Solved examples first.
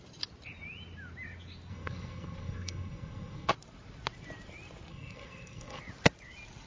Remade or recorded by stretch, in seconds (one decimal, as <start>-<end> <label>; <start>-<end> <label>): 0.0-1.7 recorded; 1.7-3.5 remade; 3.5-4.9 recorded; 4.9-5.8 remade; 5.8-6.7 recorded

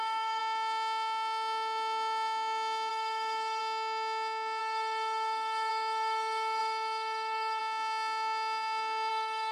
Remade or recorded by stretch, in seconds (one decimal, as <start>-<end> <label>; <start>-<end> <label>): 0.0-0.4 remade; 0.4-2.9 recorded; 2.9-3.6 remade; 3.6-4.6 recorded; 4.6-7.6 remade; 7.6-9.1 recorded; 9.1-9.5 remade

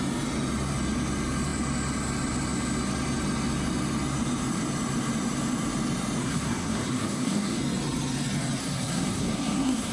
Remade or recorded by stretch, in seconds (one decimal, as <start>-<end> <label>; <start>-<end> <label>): 0.0-6.2 recorded; 6.2-7.6 remade; 7.6-8.6 recorded; 8.6-9.9 remade